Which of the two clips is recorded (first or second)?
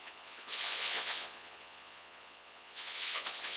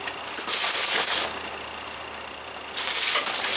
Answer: second